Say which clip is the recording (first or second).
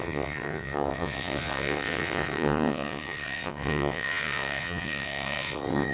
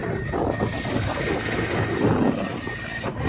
second